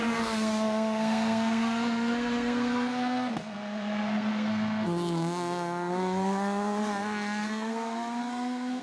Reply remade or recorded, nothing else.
remade